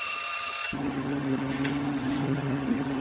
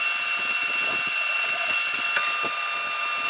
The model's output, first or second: first